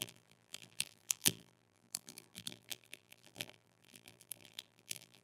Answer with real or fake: fake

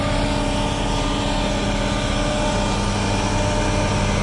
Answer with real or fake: real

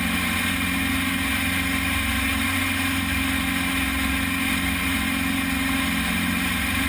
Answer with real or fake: real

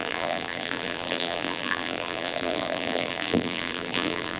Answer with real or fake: fake